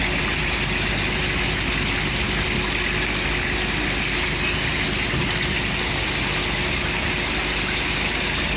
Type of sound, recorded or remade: recorded